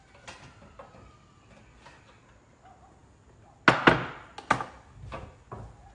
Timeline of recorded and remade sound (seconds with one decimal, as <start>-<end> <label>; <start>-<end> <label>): 0.0-5.9 recorded